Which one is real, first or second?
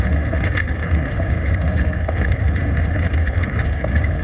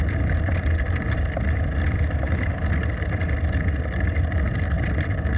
second